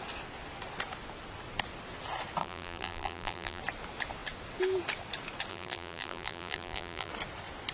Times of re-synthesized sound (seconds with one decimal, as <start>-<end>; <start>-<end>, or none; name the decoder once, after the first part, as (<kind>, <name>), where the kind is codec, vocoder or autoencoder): 2.4-3.6 (vocoder, BigVGAN v2); 5.5-7.1